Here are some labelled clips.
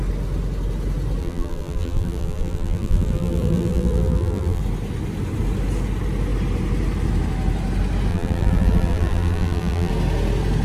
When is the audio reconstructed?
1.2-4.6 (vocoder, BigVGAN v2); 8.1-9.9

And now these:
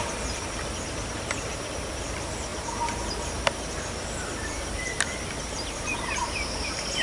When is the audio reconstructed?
0.0-7.0 (vocoder, BigVGAN v2)

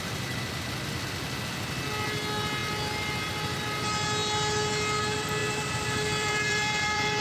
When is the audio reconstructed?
5.4-7.2 (vocoder, BigVGAN v2)

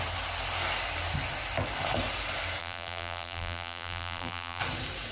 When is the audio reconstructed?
2.6-4.6 (vocoder, BigVGAN v2)

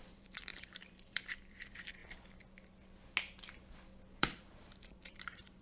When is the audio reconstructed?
0.0-2.0 (vocoder, BigVGAN v2); 4.2-5.6

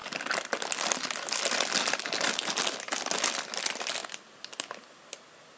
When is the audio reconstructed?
none

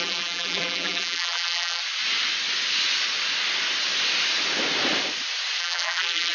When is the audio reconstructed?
0.0-1.8 (vocoder, BigVGAN v2); 5.6-6.3